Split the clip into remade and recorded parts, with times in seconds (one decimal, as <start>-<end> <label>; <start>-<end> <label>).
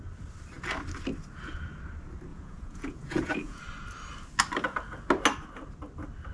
0.0-2.3 recorded; 2.3-3.6 remade; 3.6-6.3 recorded